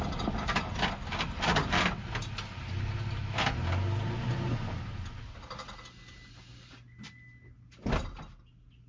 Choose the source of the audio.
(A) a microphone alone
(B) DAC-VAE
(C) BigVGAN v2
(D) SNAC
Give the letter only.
A